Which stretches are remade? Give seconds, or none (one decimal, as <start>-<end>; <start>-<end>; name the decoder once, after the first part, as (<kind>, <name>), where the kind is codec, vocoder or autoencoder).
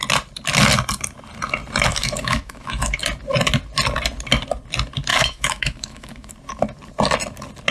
1.9-3.0 (autoencoder, DAC-VAE); 5.1-6.3